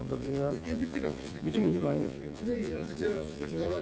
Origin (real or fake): fake